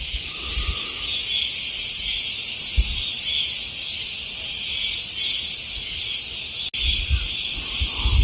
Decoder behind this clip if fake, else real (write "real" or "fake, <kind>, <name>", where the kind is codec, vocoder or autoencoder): real